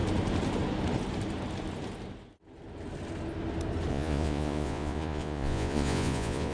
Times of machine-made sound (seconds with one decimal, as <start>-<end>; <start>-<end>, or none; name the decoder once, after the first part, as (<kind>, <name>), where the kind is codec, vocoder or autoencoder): 3.9-6.5 (vocoder, Vocos)